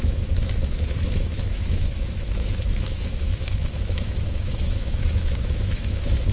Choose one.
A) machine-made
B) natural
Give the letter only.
A